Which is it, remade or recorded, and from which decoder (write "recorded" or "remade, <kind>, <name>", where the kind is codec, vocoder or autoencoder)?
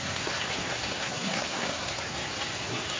remade, codec, SNAC